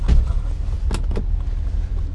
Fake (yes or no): no